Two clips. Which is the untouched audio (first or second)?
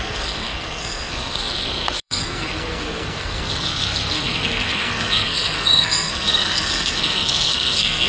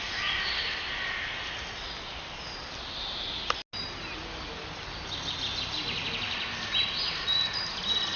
second